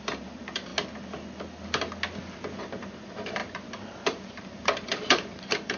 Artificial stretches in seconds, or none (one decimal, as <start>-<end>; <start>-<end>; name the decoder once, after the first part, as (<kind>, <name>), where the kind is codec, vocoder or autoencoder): 0.0-0.7 (vocoder, BigVGAN v2); 2.6-3.4; 4.3-5.8

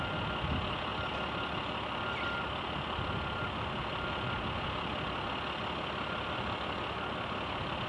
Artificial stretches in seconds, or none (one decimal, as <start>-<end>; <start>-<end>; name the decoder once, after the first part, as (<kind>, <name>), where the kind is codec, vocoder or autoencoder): none